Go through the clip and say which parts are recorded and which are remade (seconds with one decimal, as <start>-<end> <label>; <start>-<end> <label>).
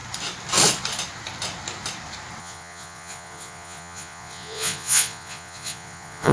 0.0-2.4 recorded; 2.4-6.3 remade